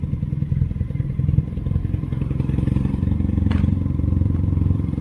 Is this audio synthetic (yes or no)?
yes